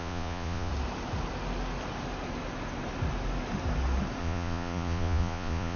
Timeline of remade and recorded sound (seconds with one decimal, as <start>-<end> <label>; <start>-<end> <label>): 0.0-0.7 remade; 0.7-4.2 recorded; 4.2-5.8 remade